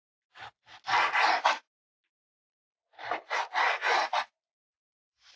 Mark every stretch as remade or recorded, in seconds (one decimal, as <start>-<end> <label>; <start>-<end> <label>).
0.0-5.4 recorded

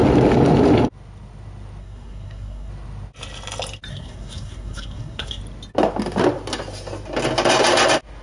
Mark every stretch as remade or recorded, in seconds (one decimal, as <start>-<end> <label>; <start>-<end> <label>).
0.0-1.8 recorded; 1.8-2.7 remade; 2.7-3.9 recorded; 3.9-5.4 remade; 5.4-8.2 recorded

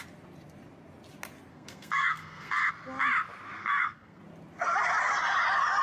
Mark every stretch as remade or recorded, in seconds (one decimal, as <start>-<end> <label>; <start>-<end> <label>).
0.0-1.5 recorded; 1.5-2.7 remade; 2.7-3.6 recorded; 3.6-4.2 remade; 4.2-5.8 recorded

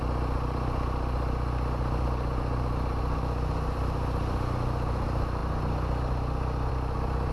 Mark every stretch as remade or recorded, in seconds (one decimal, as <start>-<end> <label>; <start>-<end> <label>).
0.0-7.3 recorded

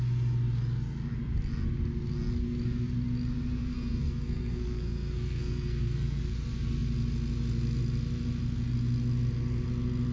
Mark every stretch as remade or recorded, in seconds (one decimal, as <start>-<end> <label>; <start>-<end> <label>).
0.0-3.6 recorded; 3.6-6.2 remade; 6.2-10.1 recorded

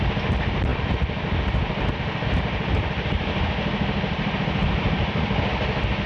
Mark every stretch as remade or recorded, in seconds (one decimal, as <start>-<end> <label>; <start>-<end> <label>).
0.0-6.1 recorded

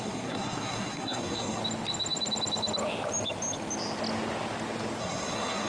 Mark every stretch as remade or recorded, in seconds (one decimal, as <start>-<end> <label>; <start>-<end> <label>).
0.0-1.6 remade; 1.6-5.0 recorded; 5.0-5.7 remade